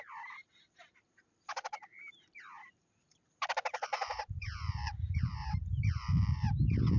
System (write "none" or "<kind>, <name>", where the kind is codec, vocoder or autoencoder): vocoder, BigVGAN v2